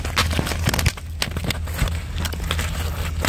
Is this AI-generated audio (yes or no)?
no